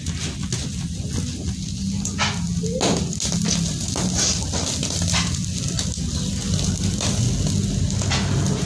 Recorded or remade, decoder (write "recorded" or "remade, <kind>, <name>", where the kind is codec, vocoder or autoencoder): recorded